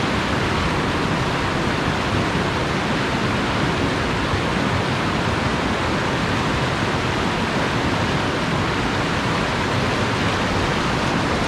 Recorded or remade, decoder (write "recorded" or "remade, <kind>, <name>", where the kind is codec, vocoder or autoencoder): recorded